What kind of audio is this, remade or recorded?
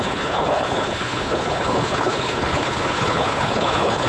remade